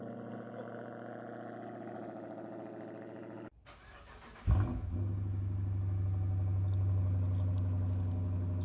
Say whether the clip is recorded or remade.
recorded